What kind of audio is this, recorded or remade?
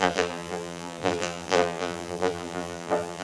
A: remade